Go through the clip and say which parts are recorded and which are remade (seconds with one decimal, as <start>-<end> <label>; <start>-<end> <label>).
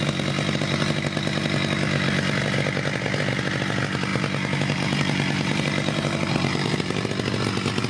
0.0-4.1 recorded; 4.1-7.0 remade; 7.0-7.9 recorded